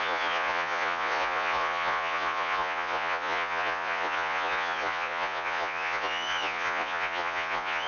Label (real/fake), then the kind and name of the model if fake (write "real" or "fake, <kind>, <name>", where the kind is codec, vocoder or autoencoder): fake, vocoder, Vocos